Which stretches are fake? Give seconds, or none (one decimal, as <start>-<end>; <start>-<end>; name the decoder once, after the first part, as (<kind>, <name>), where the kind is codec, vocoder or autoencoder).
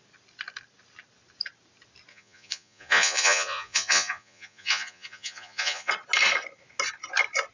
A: 2.1-5.9 (vocoder, Vocos)